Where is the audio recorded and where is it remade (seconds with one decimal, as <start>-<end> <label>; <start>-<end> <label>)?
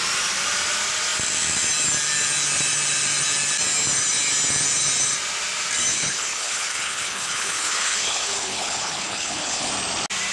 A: 0.0-5.9 recorded; 5.9-9.7 remade; 9.7-10.3 recorded